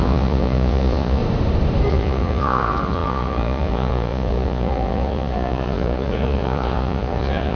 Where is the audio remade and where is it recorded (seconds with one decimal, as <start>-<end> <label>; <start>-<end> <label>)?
0.0-1.2 remade; 1.2-1.9 recorded; 1.9-7.5 remade